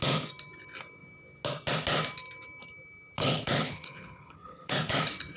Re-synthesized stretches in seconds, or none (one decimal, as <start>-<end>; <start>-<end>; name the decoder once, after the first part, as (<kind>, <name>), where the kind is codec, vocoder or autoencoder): 3.2-5.0 (codec, HILCodec)

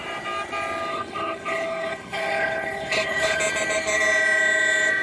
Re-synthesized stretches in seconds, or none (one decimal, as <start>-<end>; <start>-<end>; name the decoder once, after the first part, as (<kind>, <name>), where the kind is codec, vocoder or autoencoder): 0.9-3.4 (codec, HILCodec)

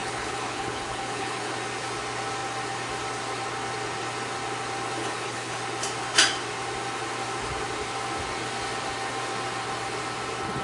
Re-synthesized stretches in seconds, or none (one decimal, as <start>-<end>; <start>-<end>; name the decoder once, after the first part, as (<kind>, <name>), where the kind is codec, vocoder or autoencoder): 0.0-1.5 (codec, HILCodec); 5.0-5.6